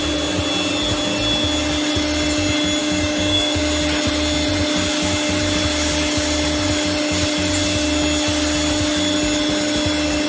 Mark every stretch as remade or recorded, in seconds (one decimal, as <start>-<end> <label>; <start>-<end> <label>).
0.0-2.8 recorded; 2.8-3.6 remade; 3.6-10.3 recorded